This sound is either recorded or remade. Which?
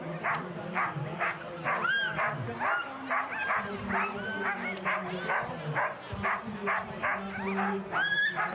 recorded